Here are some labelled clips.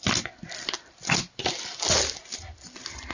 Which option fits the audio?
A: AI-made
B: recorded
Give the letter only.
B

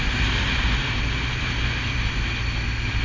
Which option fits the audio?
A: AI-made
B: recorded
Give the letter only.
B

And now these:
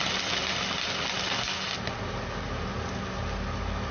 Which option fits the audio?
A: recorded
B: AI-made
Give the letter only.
A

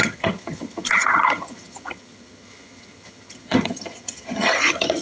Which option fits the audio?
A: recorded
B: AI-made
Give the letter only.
B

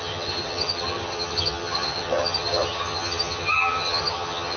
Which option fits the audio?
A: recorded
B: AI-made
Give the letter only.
B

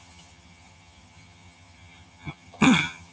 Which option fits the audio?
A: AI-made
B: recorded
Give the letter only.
A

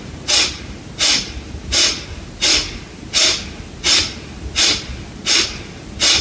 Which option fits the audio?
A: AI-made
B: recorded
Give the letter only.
B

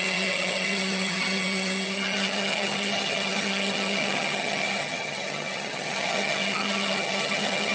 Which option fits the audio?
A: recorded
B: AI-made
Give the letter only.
B